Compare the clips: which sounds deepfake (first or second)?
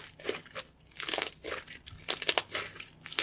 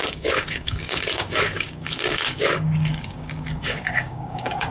second